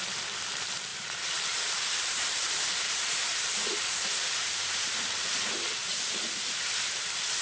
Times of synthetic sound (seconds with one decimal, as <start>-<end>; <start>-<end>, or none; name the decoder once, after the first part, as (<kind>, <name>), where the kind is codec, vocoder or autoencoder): 0.9-5.3 (vocoder, BigVGAN v2); 5.8-6.6